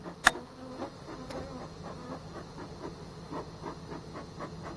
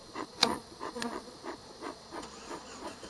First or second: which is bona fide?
first